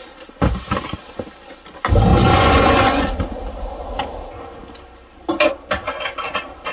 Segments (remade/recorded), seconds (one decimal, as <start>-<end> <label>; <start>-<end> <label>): 0.0-2.1 recorded; 2.1-3.1 remade; 3.1-6.7 recorded